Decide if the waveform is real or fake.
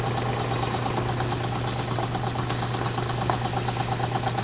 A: real